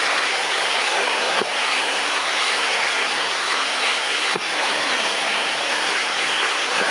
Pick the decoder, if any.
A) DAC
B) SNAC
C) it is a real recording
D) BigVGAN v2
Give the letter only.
B